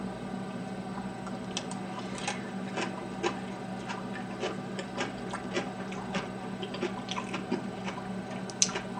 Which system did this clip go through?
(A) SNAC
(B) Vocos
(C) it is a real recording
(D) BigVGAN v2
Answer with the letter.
C